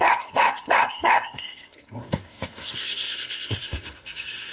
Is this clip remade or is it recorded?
remade